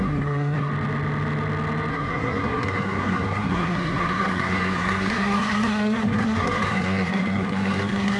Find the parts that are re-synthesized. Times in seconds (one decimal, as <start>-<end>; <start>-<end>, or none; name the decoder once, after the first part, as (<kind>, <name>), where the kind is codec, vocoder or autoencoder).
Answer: 0.0-0.7 (codec, SNAC); 1.9-8.2